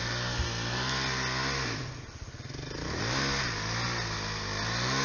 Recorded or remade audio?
recorded